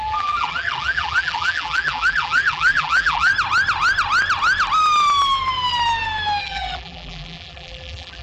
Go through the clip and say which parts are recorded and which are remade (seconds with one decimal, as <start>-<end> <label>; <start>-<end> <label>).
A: 0.0-3.3 remade; 3.3-6.4 recorded; 6.4-8.2 remade